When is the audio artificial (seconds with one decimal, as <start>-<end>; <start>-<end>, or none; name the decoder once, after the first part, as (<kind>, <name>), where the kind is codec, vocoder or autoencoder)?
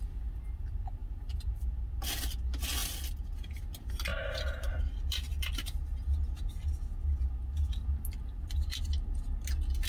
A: 1.0-1.5 (vocoder, BigVGAN v2); 4.1-4.8